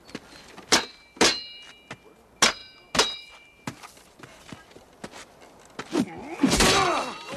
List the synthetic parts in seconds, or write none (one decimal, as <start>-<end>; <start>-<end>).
none